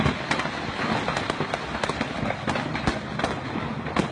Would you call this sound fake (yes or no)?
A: no